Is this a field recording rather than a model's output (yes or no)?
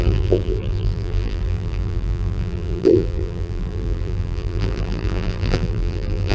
no